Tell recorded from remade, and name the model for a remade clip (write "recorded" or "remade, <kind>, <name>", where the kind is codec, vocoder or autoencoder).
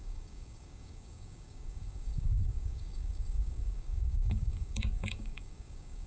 remade, codec, DAC